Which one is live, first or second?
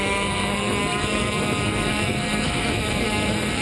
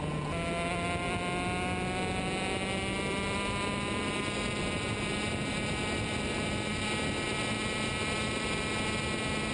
second